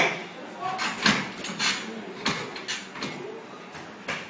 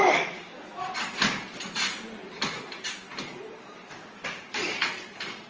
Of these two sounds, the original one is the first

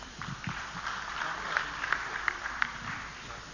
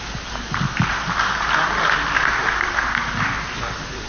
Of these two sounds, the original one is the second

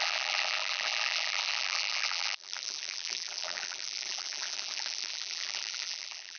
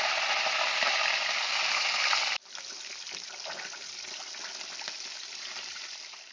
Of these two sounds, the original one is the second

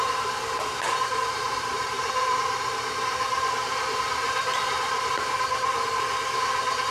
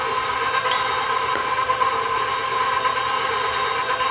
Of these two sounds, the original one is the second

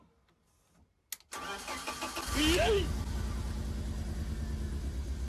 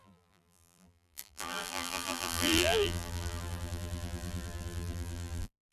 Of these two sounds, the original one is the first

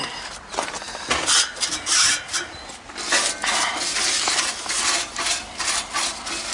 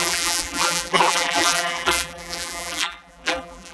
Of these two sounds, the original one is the first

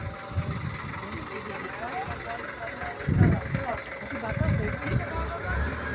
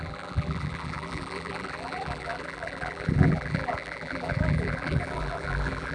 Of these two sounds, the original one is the first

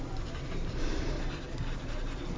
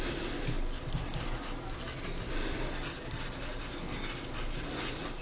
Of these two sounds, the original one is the second